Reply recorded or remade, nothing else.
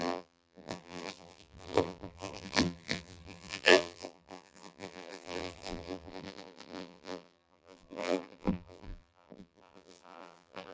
remade